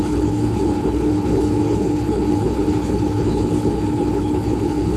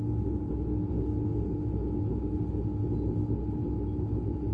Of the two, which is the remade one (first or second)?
first